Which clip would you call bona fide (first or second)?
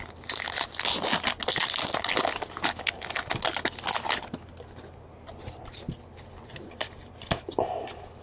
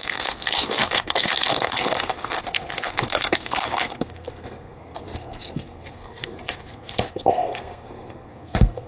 first